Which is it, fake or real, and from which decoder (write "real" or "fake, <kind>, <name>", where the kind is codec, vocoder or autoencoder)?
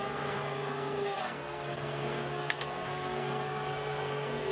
fake, codec, SNAC